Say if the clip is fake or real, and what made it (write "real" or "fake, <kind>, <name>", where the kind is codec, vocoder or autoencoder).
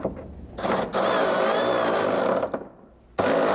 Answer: real